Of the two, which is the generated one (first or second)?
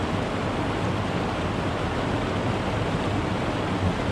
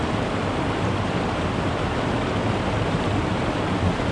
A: second